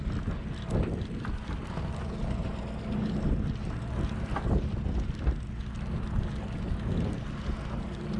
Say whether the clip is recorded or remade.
recorded